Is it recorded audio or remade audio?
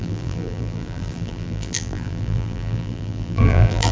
remade